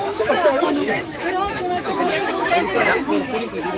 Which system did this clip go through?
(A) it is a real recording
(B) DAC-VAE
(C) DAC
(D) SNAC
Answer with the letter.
B